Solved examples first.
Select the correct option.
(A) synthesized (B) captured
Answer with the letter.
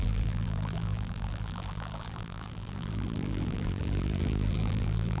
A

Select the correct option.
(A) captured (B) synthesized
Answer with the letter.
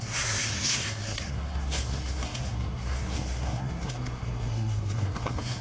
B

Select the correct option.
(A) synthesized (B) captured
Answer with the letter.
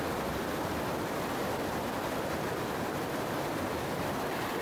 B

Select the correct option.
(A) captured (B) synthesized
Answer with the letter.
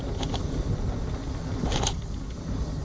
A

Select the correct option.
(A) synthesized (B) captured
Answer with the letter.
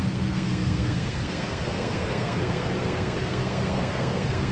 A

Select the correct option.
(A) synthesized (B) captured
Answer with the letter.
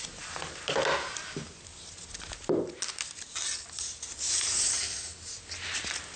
B